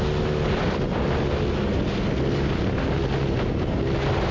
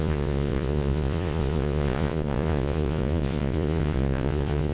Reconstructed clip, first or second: second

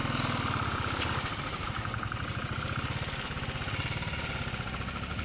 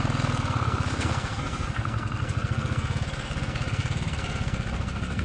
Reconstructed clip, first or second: second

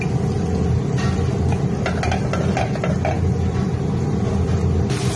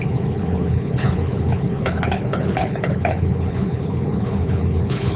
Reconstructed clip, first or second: second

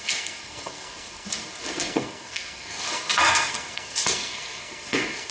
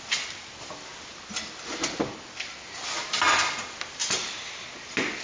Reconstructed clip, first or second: first